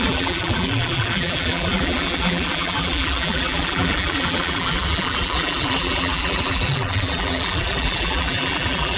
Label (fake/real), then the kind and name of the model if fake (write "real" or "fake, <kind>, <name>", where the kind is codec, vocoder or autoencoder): fake, vocoder, BigVGAN v2